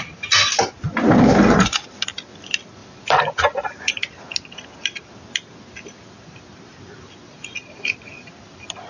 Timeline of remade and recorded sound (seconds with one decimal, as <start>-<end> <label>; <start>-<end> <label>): 0.0-2.8 recorded; 2.8-3.3 remade; 3.3-8.9 recorded